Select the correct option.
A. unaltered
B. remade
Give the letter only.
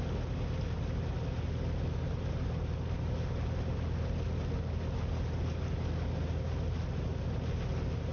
A